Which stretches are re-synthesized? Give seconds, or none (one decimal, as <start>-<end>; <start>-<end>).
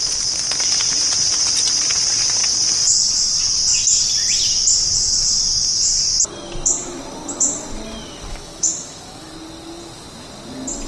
8.3-9.3